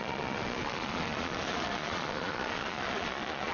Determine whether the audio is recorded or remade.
remade